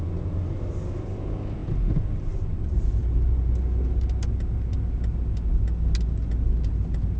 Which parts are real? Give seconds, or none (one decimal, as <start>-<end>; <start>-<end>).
0.0-7.2